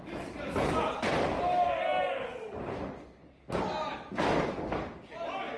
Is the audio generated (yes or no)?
no